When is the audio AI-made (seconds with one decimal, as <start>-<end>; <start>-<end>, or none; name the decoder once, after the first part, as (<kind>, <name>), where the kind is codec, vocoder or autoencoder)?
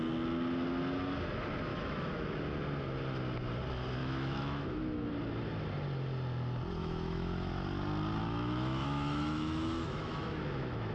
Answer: 1.7-2.4 (autoencoder, DAC-VAE); 4.0-5.1; 6.8-7.5; 8.2-10.9